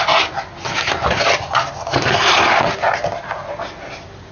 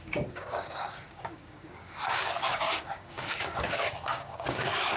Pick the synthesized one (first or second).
second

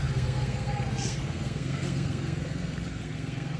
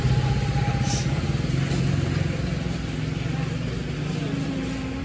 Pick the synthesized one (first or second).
first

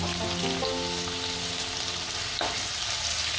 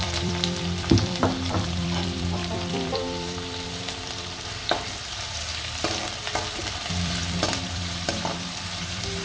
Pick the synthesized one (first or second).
second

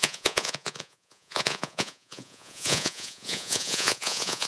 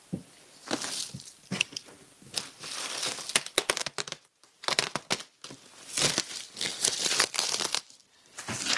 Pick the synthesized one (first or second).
first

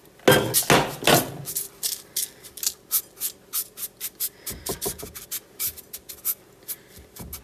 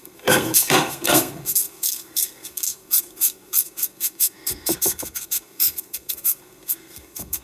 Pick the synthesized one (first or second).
second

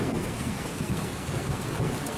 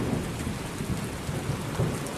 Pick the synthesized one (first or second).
first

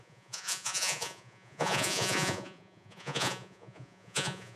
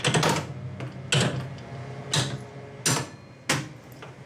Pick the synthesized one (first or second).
first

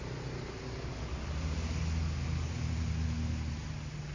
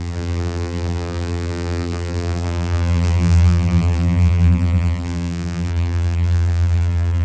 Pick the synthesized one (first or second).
second